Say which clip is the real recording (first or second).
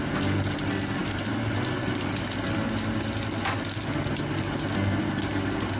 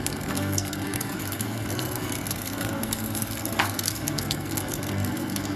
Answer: first